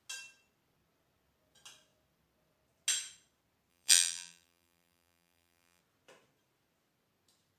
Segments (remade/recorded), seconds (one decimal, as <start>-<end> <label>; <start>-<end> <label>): 0.0-3.7 recorded; 3.7-5.8 remade; 5.8-7.6 recorded

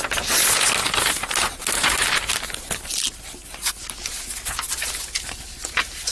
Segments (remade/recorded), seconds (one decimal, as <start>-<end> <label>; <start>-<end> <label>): 0.0-6.1 recorded

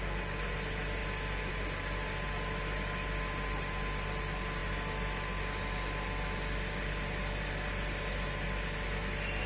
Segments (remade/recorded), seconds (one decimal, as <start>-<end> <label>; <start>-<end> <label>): 0.0-9.5 recorded

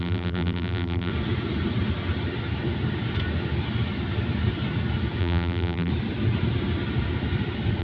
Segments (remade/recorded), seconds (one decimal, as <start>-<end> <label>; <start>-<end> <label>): 0.0-1.1 remade; 1.1-5.2 recorded; 5.2-5.9 remade; 5.9-7.8 recorded

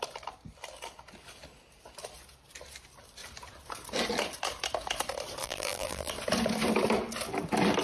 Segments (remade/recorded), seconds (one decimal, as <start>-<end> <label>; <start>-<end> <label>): 0.0-5.4 recorded; 5.4-6.1 remade; 6.1-7.8 recorded

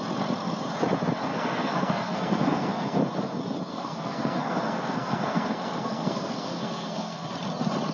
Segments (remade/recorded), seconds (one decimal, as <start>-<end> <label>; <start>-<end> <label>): 0.0-1.3 recorded; 1.3-3.0 remade; 3.0-3.7 recorded; 3.7-7.3 remade; 7.3-7.9 recorded

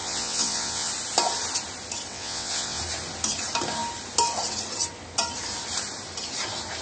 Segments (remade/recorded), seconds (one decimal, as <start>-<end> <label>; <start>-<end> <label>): 0.0-0.9 remade; 0.9-2.1 recorded; 2.1-2.8 remade; 2.8-6.8 recorded